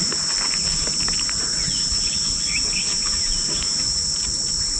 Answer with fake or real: real